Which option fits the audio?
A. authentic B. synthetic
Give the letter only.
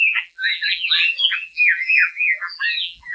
B